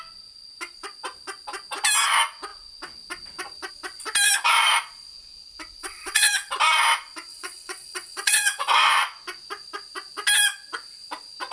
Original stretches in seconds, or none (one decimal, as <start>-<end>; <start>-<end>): 0.0-5.8; 6.5-7.3; 8.9-11.5